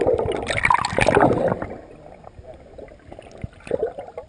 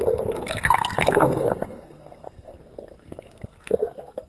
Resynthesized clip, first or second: second